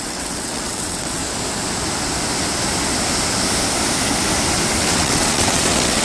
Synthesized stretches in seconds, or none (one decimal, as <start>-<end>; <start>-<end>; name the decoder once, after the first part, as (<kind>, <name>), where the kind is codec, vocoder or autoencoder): 0.0-1.2 (vocoder, WaveNeXt); 4.8-6.0